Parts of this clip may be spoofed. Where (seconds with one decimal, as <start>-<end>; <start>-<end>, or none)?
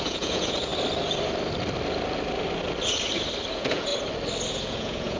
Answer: 0.0-0.7; 3.5-3.9; 4.5-5.2